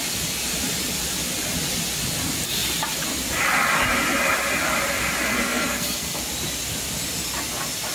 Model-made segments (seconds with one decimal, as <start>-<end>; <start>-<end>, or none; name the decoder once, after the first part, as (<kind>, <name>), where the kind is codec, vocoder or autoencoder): 5.3-6.2 (codec, SNAC)